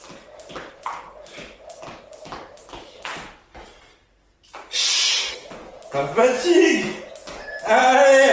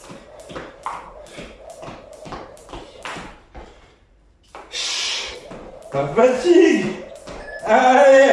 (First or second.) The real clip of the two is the first